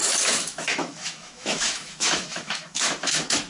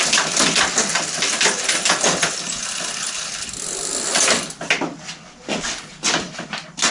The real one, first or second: second